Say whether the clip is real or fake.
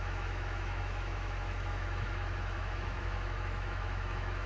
fake